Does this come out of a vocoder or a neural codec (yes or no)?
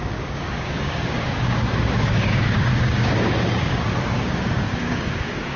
yes